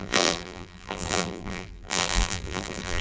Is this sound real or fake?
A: fake